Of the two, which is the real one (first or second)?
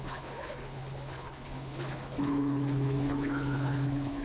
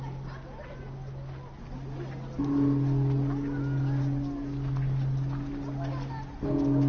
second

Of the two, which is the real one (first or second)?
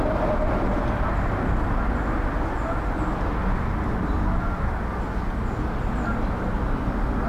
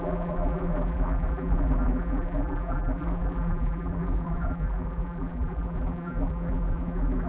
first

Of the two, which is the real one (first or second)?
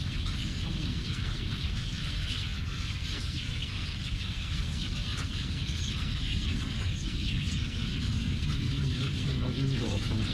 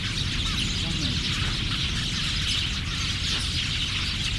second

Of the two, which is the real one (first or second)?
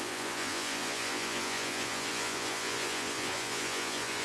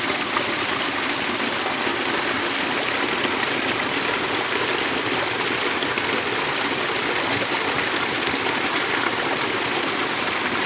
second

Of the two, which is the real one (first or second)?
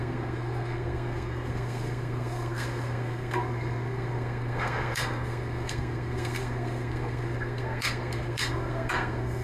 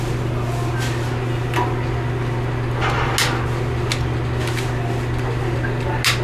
second